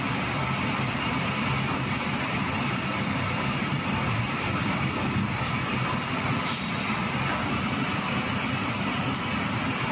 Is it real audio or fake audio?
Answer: fake